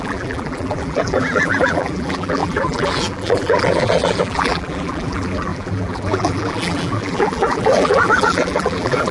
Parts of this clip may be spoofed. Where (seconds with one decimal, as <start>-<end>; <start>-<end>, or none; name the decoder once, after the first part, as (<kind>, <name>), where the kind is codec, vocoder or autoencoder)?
0.0-9.1 (vocoder, BigVGAN v2)